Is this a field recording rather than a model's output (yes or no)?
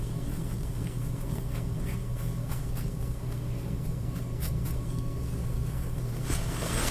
no